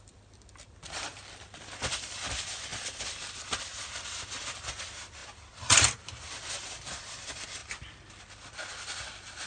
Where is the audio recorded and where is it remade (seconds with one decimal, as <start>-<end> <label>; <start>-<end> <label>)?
0.0-7.6 remade; 7.6-8.2 recorded; 8.2-9.5 remade